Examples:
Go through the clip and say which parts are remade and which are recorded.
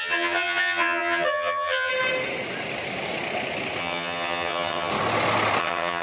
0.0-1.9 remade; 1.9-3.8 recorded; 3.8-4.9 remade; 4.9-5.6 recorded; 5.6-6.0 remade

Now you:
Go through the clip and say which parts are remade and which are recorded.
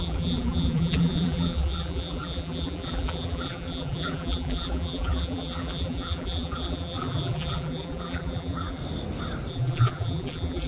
0.0-8.8 remade; 8.8-9.5 recorded; 9.5-10.7 remade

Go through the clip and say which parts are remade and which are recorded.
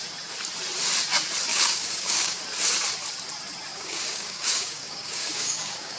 0.0-1.5 recorded; 1.5-2.4 remade; 2.4-3.7 recorded; 3.7-6.0 remade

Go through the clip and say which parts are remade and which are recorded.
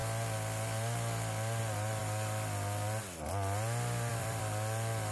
0.0-1.6 recorded; 1.6-2.0 remade; 2.0-4.1 recorded; 4.1-5.1 remade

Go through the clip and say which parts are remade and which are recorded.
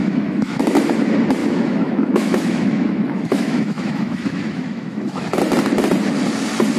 0.0-0.6 remade; 0.6-1.4 recorded; 1.4-5.3 remade; 5.3-6.8 recorded